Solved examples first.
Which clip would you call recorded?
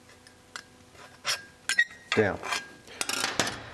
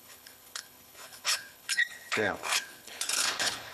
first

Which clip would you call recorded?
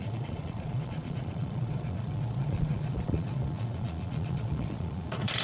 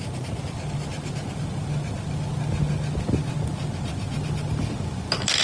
second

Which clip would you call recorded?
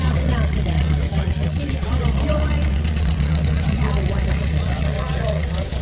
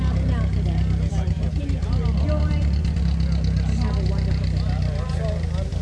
second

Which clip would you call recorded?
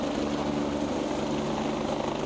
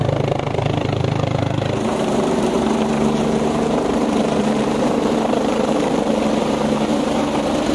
first